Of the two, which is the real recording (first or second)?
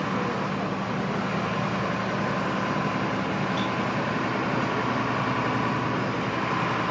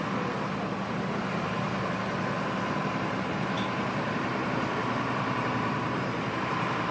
first